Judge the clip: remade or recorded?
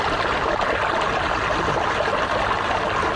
recorded